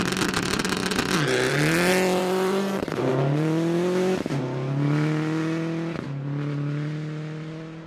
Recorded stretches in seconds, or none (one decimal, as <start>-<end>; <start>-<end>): 0.0-2.2; 3.1-7.9